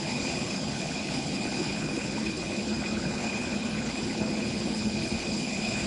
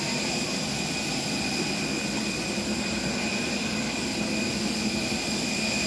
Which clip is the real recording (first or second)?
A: second